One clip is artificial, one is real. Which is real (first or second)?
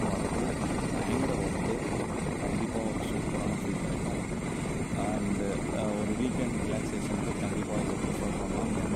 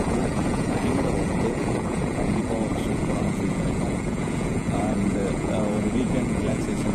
first